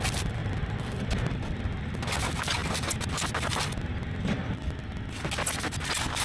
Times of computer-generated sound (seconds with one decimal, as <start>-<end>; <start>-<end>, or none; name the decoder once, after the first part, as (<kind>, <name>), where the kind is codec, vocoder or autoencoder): none